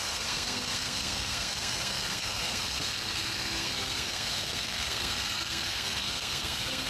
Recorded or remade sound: remade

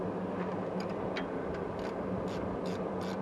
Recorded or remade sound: recorded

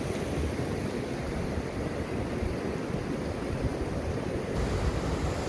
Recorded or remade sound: recorded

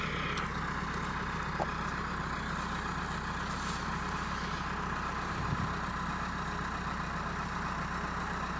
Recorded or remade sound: recorded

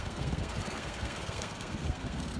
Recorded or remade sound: remade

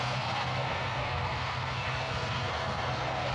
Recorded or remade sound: remade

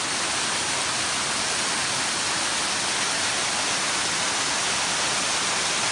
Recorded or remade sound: recorded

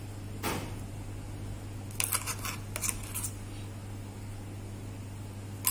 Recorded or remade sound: recorded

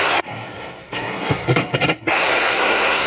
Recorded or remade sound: remade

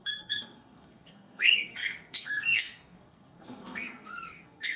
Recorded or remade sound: remade